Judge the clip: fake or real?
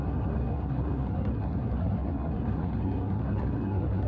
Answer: fake